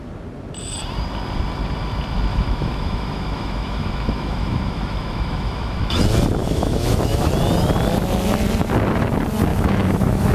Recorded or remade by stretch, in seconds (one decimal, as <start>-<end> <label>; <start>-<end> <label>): 0.0-2.3 recorded; 2.3-6.0 remade; 6.0-6.4 recorded; 6.4-7.3 remade; 7.3-9.5 recorded; 9.5-10.3 remade